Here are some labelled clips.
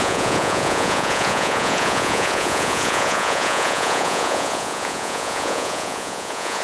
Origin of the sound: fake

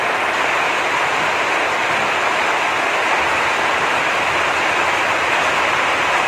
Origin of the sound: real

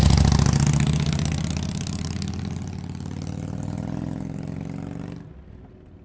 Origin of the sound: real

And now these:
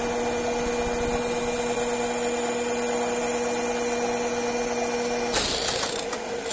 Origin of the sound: real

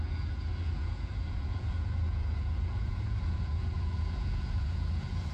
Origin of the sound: fake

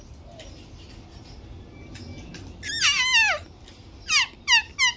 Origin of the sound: real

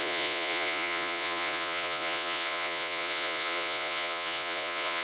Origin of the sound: fake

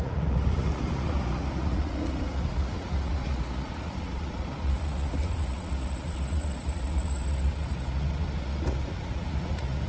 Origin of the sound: fake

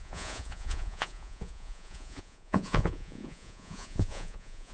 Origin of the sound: fake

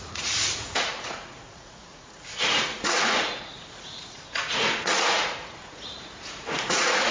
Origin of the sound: fake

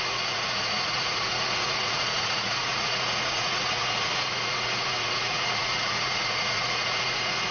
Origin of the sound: fake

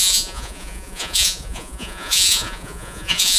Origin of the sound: fake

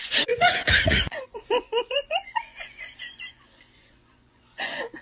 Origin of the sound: fake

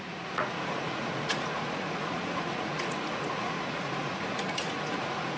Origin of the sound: fake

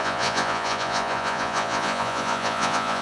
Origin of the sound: fake